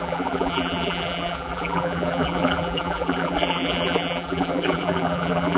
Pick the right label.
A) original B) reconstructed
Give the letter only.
B